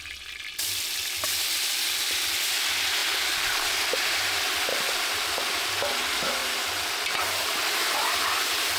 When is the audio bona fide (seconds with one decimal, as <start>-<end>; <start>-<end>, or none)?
0.0-4.7; 5.7-6.4; 7.6-8.8